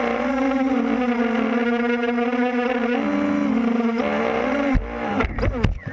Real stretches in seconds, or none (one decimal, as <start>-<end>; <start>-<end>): 0.0-5.9